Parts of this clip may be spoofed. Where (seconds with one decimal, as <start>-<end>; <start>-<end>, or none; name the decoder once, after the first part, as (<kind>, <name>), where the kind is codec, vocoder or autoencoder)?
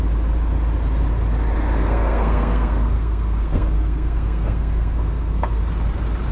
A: 1.8-5.6 (codec, SNAC)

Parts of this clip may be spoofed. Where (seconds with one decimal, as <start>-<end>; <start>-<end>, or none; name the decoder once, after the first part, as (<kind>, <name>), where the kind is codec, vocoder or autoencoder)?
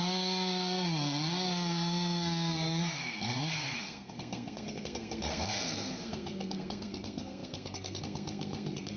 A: 0.0-9.0 (codec, SNAC)